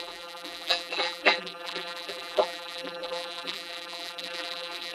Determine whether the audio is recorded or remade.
remade